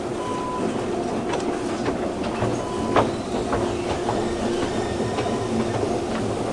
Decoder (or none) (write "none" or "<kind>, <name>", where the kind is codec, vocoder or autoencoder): none